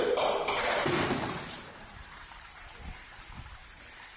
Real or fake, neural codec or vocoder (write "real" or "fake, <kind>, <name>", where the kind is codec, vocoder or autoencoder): fake, vocoder, BigVGAN v2